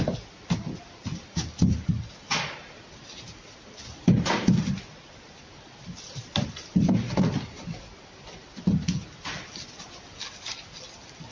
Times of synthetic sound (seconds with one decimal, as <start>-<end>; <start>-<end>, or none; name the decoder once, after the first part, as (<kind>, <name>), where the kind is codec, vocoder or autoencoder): none

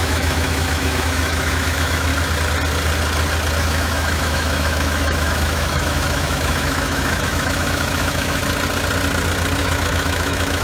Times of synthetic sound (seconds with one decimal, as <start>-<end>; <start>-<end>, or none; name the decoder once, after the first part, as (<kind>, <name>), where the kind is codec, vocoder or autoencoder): 0.0-2.1 (autoencoder, DAC-VAE); 3.6-8.4; 9.6-10.6

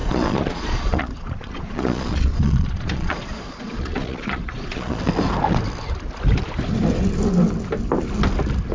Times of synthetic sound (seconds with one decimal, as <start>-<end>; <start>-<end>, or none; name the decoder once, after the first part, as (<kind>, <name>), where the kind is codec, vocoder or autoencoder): 0.0-5.0 (vocoder, Vocos)

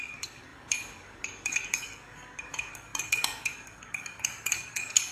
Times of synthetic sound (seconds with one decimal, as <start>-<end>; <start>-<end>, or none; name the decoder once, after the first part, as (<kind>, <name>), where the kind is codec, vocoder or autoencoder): 0.0-5.1 (codec, DAC)

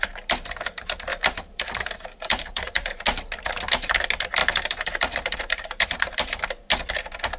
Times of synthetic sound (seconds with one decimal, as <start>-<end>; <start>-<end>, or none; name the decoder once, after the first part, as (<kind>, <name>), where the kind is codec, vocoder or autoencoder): 1.1-3.0 (vocoder, BigVGAN v2); 4.4-6.4